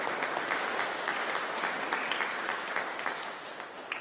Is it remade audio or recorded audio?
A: recorded